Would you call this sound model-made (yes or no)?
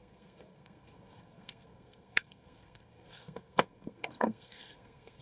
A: yes